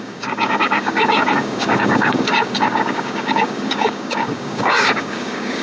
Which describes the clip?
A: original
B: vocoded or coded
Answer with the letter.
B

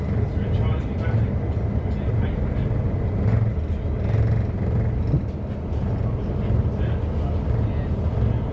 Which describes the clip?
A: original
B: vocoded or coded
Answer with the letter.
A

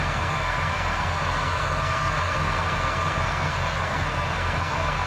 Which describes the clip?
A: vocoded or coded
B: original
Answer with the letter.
A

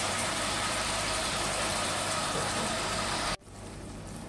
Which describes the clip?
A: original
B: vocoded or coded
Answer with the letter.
B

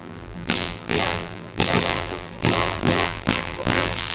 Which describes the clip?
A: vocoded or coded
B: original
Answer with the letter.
A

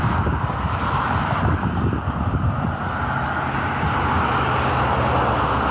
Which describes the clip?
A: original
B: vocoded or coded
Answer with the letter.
A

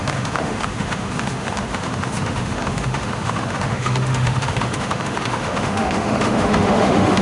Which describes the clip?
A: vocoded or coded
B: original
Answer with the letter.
A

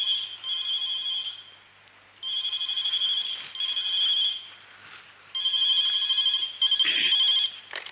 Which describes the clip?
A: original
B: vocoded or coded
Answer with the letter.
A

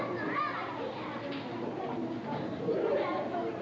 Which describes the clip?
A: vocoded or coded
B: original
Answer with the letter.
B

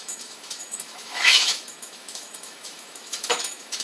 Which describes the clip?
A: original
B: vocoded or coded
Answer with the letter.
B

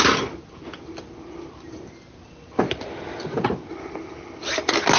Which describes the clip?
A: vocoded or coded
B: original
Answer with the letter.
B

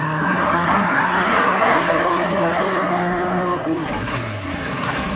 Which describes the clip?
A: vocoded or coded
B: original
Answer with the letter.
A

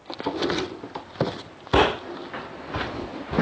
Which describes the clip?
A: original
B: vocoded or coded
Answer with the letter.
A